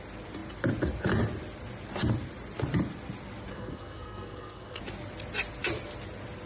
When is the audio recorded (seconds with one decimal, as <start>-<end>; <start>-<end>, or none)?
0.0-3.5; 4.8-6.5